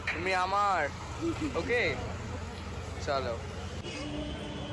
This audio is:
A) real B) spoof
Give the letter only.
A